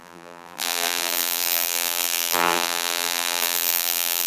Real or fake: fake